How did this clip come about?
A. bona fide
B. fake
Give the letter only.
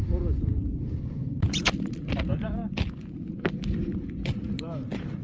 A